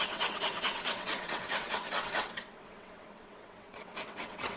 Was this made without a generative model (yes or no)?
no